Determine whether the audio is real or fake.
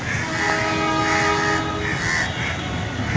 real